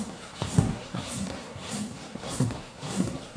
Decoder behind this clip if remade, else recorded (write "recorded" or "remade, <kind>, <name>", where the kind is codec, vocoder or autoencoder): remade, codec, SNAC